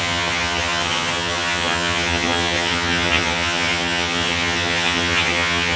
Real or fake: fake